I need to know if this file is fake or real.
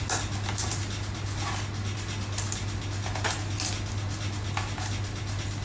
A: real